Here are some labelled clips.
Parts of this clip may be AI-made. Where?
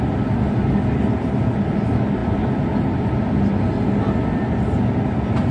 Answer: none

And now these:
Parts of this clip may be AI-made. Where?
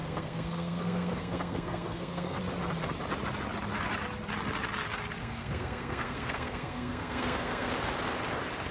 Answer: 0.0-2.4 (codec, SNAC); 5.2-7.7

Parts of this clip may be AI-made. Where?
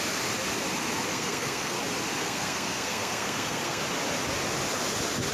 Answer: 1.1-1.8 (codec, SNAC); 2.2-3.8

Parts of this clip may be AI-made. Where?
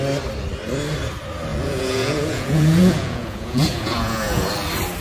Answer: 1.5-4.5 (vocoder, Vocos)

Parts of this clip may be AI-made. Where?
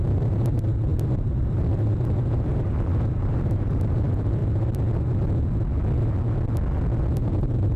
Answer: 0.0-4.4 (vocoder, BigVGAN v2); 7.2-7.8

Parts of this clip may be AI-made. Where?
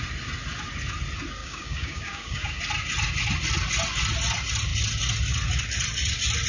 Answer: 1.4-2.6 (codec, DAC)